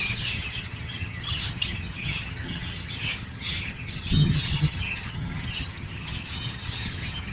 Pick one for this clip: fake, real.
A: fake